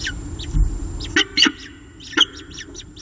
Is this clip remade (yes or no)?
no